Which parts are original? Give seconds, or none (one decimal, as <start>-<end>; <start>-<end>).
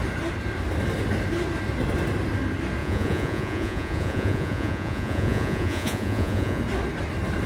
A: 0.0-2.8; 6.6-7.5